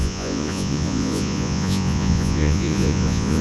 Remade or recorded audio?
remade